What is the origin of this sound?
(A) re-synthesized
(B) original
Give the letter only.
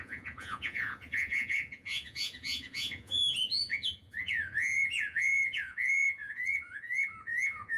A